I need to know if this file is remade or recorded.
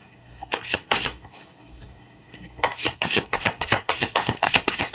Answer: remade